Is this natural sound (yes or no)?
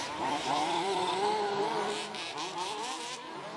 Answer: no